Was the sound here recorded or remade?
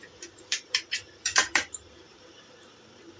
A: remade